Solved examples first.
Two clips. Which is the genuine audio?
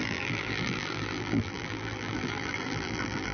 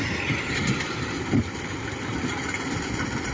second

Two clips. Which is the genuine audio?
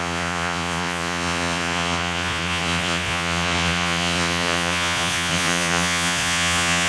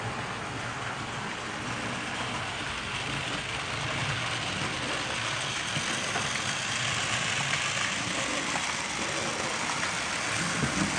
second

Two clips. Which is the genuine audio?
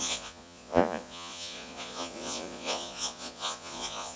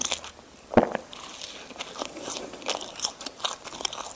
second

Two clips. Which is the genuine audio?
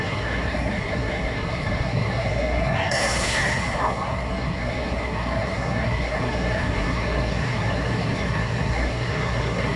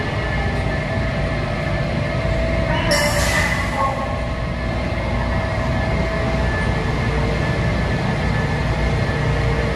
second